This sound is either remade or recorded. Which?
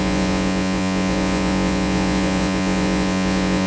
remade